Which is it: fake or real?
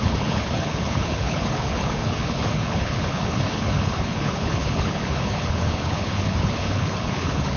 fake